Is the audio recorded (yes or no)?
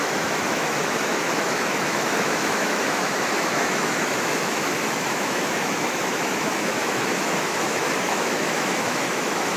no